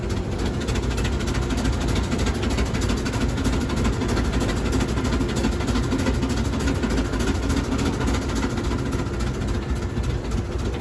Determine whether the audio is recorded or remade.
recorded